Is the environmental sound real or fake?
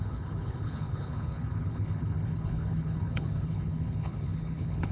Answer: fake